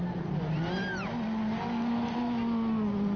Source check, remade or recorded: recorded